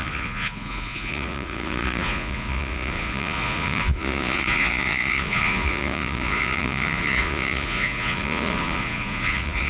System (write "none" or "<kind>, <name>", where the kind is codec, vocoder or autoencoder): vocoder, Vocos